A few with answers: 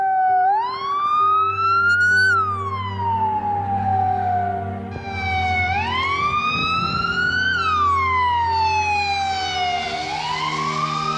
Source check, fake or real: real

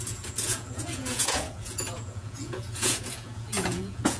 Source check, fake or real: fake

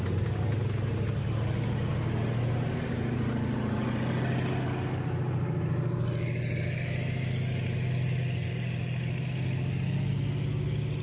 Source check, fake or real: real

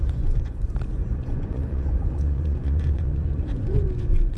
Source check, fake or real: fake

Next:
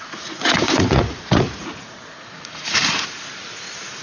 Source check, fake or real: fake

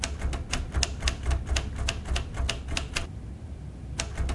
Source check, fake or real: real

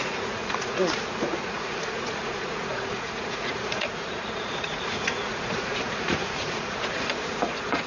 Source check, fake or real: fake